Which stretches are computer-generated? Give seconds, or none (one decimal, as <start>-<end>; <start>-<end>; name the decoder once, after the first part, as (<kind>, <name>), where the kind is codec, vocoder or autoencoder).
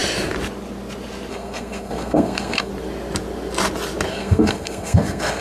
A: 1.3-2.7 (codec, SNAC); 4.1-5.4